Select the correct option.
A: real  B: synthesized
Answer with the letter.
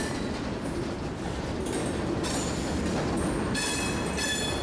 A